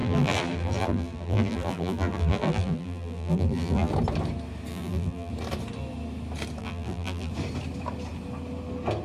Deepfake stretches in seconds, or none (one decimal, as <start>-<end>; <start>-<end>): 0.0-3.9; 4.7-5.3; 6.6-7.3